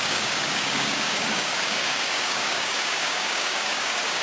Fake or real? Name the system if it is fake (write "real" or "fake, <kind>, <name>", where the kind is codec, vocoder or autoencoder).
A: fake, codec, DAC